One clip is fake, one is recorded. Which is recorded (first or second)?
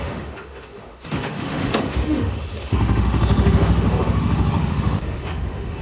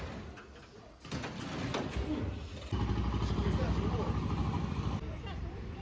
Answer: second